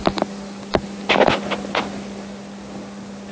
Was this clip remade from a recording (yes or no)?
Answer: no